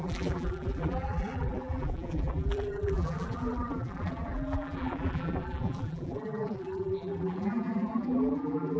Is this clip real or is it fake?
fake